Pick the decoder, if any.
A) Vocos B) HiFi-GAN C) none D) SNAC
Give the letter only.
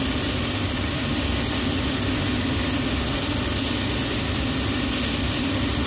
C